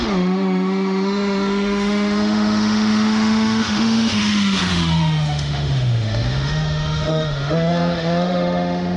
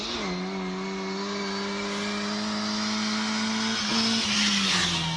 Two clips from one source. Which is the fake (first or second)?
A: first